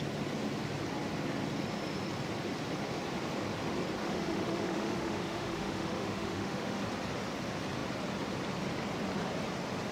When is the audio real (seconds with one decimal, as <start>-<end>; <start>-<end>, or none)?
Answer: 0.0-4.0; 6.8-9.9